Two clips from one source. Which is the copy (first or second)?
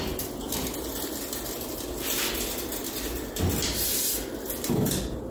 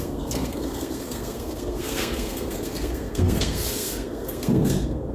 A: second